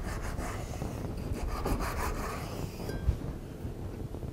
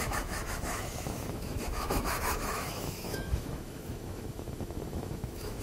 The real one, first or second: first